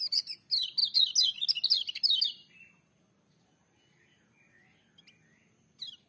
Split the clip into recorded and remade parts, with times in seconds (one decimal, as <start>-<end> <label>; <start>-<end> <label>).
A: 0.0-6.1 recorded